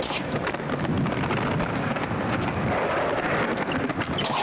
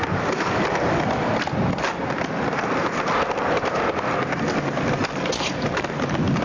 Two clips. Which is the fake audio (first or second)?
second